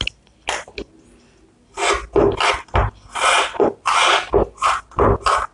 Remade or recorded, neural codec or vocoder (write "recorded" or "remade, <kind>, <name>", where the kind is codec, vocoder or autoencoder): recorded